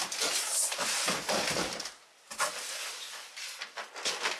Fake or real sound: real